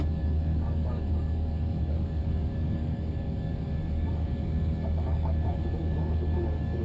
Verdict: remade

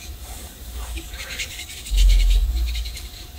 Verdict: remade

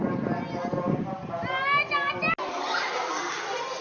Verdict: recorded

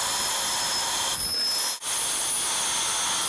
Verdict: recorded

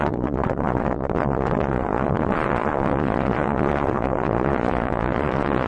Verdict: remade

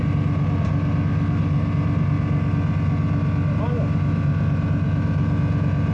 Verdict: recorded